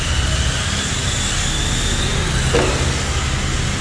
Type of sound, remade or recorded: recorded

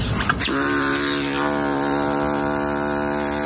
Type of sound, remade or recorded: recorded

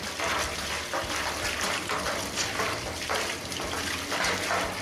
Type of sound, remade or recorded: recorded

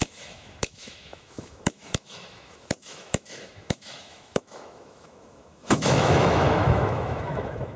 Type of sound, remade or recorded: remade